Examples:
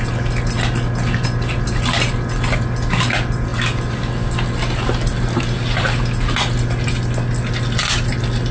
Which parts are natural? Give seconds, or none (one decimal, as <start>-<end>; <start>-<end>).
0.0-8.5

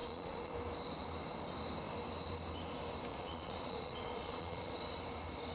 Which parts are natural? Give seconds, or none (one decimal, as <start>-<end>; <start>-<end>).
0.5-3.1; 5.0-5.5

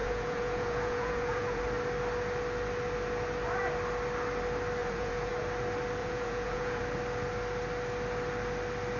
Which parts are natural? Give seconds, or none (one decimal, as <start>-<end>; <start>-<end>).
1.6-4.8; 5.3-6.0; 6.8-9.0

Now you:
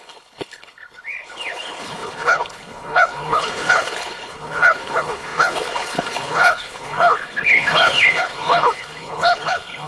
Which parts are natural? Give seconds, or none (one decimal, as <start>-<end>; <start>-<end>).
none

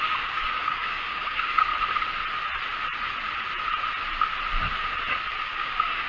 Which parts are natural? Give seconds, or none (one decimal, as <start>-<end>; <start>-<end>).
1.7-5.4

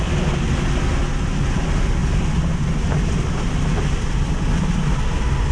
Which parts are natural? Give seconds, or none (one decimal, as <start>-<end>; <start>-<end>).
0.0-5.5